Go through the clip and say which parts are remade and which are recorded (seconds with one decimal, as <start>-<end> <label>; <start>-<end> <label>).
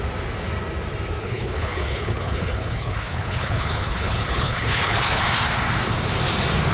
0.0-1.2 recorded; 1.2-5.2 remade; 5.2-6.7 recorded